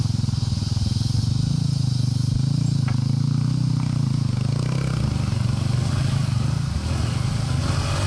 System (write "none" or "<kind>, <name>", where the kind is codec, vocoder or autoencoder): none